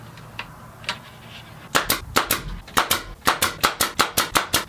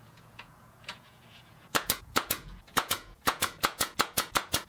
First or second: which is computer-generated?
second